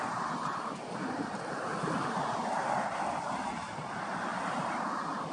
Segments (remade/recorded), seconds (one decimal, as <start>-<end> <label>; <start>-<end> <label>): 0.0-5.3 recorded